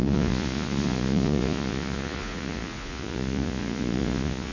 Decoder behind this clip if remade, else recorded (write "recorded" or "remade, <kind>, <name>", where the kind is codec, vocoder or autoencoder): remade, vocoder, Vocos